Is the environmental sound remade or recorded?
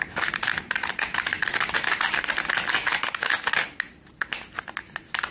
recorded